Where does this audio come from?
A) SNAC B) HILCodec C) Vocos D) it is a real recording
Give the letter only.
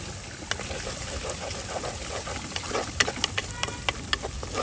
D